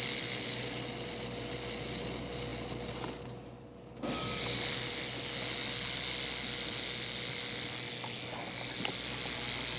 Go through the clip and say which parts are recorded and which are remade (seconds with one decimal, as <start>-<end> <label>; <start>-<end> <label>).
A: 0.0-9.8 recorded